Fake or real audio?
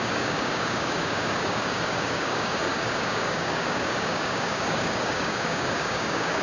fake